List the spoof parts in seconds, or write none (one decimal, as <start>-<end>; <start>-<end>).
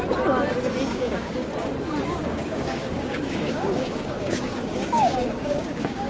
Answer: 0.9-1.5; 2.1-6.1